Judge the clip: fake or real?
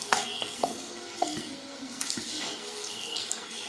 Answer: fake